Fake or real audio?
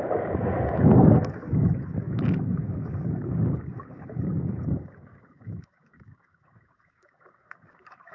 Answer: fake